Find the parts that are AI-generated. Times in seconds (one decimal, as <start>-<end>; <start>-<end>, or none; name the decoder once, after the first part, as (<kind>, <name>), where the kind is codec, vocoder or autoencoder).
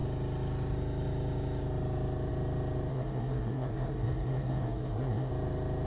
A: 2.9-5.3 (codec, SNAC)